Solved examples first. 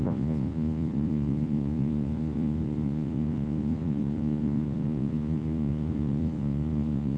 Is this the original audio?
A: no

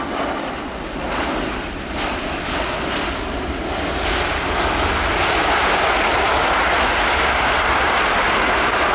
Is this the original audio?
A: yes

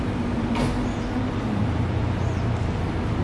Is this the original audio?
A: yes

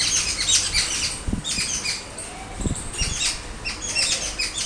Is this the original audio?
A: yes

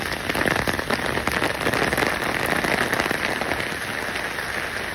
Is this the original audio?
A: yes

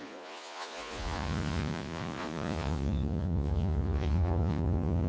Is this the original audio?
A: no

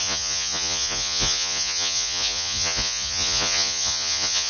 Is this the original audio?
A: no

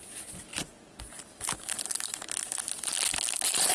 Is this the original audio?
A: yes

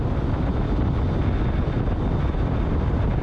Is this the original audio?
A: yes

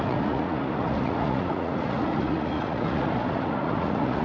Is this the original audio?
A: no